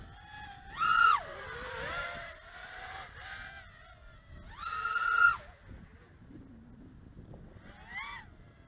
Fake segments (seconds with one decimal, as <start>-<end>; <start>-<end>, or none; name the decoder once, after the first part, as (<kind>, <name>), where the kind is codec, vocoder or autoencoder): none